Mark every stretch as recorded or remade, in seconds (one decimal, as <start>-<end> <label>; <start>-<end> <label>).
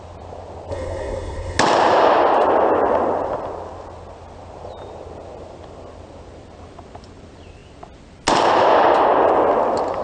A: 0.0-0.7 recorded; 0.7-1.6 remade; 1.6-10.0 recorded